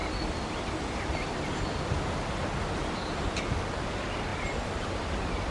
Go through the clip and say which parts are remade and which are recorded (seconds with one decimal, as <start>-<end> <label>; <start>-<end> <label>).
0.0-5.5 recorded